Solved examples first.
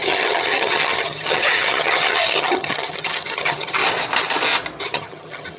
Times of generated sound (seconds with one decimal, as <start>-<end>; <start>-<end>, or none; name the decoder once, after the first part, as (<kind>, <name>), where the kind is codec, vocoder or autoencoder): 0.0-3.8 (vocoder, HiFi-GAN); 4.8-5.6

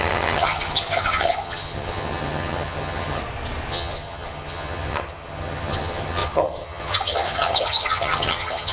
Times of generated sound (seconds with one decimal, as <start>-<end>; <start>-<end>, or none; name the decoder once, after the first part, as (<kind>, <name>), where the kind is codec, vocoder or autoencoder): 0.0-3.2 (vocoder, HiFi-GAN); 3.7-8.7

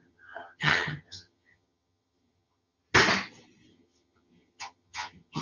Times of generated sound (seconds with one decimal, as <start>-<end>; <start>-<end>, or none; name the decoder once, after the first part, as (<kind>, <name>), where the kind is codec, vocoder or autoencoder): 0.0-2.9 (vocoder, HiFi-GAN); 3.7-5.4

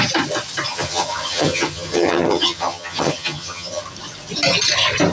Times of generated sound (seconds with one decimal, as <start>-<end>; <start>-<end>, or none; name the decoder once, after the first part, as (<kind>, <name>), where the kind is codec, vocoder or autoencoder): 0.7-3.8 (vocoder, HiFi-GAN)

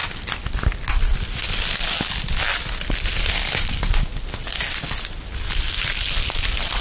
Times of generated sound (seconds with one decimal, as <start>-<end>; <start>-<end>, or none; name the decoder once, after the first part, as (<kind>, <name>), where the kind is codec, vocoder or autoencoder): none